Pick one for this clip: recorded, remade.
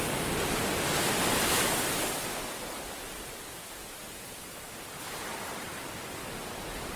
recorded